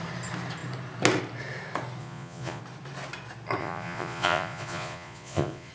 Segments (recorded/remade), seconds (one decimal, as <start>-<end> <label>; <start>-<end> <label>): 0.0-2.0 recorded; 2.0-2.6 remade; 2.6-3.6 recorded; 3.6-5.7 remade